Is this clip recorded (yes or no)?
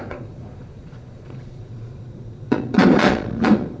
no